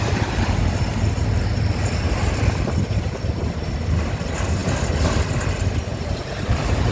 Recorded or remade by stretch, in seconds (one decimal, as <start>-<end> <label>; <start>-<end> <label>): 0.0-5.9 recorded; 5.9-6.9 remade